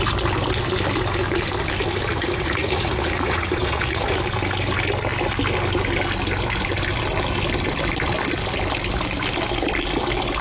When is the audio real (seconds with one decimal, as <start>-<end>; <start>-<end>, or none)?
0.0-2.0; 4.2-10.4